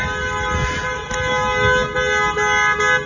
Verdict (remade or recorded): recorded